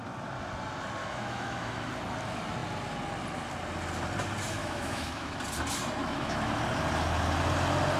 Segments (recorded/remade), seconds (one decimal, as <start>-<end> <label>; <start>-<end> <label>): 0.0-1.0 recorded; 1.0-1.9 remade; 1.9-4.6 recorded; 4.6-5.3 remade; 5.3-6.0 recorded; 6.0-6.6 remade; 6.6-8.0 recorded